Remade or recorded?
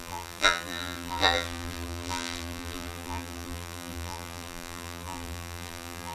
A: remade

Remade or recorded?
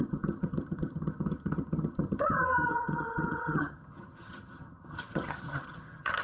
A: remade